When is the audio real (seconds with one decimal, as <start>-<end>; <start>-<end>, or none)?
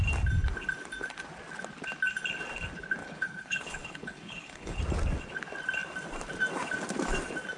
0.0-3.0; 4.8-7.6